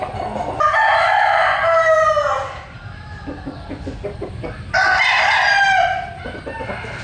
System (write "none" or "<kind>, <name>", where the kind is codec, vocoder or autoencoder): none